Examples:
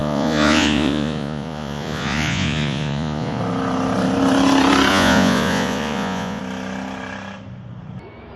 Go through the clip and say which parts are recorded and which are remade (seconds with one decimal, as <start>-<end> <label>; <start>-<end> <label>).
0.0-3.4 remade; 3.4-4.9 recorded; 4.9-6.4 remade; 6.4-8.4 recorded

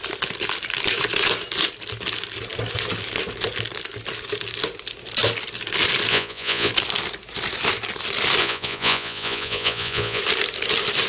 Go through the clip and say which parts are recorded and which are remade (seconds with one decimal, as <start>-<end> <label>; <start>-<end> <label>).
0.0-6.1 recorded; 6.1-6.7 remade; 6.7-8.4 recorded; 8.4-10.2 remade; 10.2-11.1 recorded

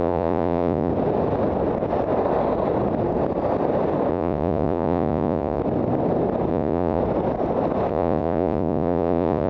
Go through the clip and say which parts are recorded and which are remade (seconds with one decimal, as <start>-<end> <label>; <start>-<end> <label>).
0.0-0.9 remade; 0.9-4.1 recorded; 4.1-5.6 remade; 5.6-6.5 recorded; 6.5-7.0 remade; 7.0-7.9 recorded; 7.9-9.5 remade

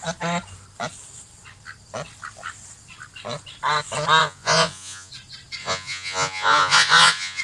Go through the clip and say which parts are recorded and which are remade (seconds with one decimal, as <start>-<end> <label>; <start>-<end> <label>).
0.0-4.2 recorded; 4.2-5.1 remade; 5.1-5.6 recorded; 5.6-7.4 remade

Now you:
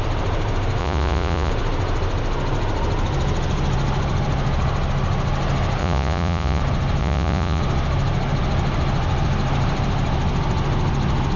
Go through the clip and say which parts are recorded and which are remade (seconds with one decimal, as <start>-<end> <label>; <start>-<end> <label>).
0.0-0.8 recorded; 0.8-1.5 remade; 1.5-5.8 recorded; 5.8-6.6 remade; 6.6-7.0 recorded; 7.0-7.6 remade; 7.6-11.4 recorded